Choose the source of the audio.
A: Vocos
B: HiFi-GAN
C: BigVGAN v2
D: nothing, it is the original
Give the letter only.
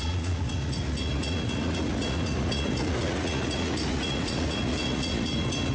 A